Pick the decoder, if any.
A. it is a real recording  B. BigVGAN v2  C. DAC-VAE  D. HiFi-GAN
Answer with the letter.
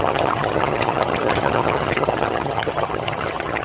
D